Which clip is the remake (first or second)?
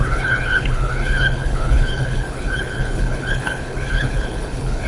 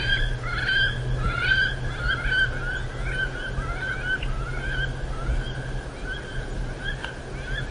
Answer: first